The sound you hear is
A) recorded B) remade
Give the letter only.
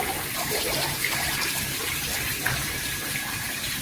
B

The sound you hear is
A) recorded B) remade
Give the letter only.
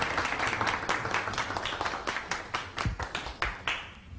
A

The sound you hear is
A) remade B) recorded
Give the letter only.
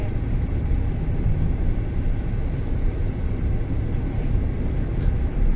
A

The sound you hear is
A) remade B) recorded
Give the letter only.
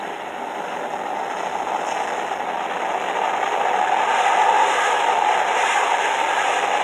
B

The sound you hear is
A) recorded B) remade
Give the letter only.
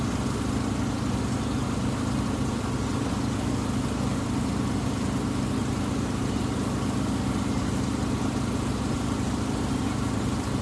A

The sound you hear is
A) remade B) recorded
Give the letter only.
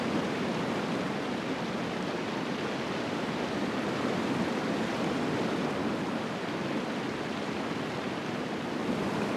B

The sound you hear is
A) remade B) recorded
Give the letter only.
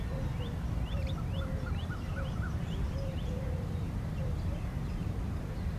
A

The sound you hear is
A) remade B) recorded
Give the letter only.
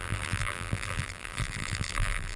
A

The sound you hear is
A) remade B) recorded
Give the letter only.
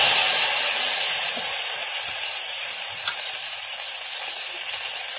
A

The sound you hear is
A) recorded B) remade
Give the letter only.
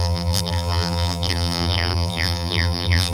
B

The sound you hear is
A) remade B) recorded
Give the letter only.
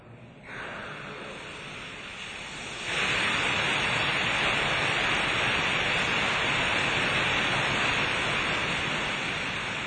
B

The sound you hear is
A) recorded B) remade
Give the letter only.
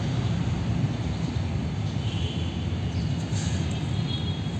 A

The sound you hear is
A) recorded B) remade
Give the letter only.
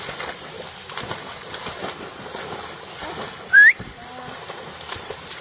A